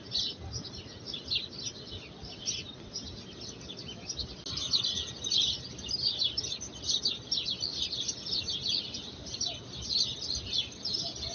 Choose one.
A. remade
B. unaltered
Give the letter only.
B